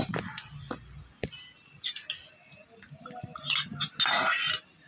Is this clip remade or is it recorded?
recorded